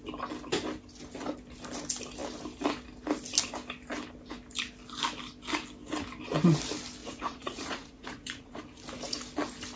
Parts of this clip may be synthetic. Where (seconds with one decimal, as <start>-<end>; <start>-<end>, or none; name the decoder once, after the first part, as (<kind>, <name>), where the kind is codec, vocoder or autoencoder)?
7.0-8.6 (vocoder, Vocos)